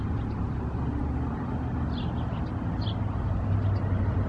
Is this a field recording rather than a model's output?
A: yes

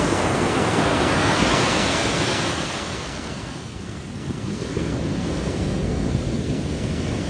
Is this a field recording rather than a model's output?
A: no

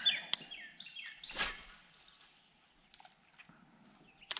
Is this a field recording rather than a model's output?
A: yes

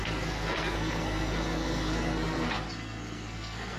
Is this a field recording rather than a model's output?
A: no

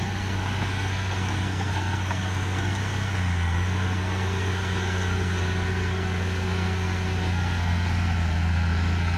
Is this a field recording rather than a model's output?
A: no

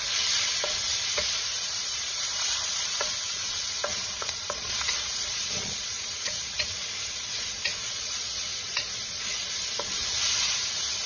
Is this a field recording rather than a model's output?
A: no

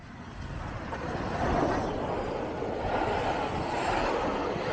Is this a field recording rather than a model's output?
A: yes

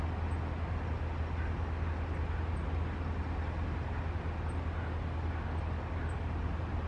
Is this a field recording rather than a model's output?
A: yes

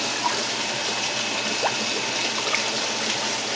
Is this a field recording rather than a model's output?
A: yes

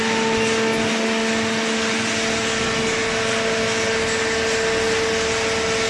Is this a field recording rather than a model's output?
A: yes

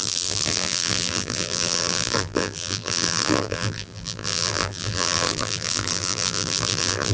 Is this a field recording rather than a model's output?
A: no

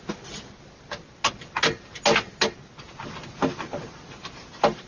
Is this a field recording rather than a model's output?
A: yes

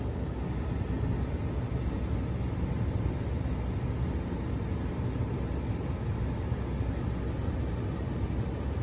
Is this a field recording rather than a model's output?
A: yes